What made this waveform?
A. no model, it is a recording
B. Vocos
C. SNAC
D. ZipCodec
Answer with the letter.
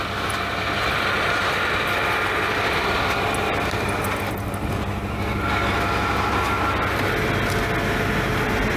A